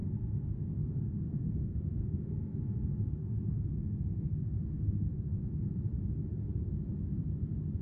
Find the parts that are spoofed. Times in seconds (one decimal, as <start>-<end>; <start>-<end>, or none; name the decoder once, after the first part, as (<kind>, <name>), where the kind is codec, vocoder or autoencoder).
0.0-2.6 (codec, SNAC); 3.2-5.8